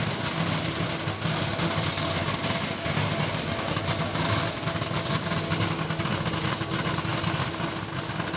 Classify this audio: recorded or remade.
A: recorded